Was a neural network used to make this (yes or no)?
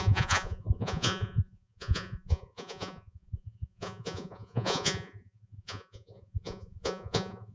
yes